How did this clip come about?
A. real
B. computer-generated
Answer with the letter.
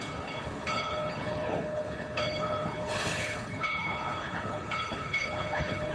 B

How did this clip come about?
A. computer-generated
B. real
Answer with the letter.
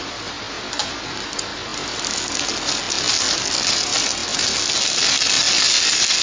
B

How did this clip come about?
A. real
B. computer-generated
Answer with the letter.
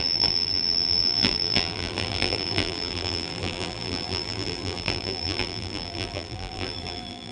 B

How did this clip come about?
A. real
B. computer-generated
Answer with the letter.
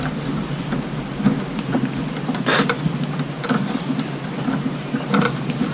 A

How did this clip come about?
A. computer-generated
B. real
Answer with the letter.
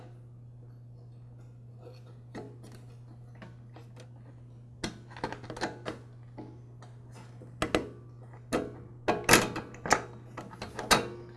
B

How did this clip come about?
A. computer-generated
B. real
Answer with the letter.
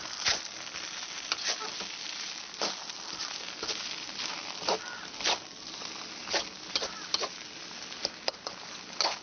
B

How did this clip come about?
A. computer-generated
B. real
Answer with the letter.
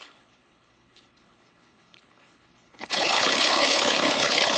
A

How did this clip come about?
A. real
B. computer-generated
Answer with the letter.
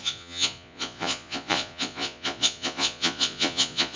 B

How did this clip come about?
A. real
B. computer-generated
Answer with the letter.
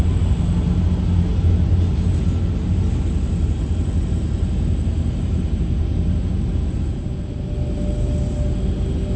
A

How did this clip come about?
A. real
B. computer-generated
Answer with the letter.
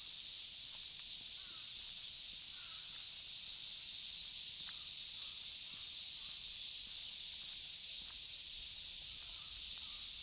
A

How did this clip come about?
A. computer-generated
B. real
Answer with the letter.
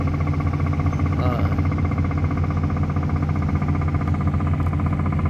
B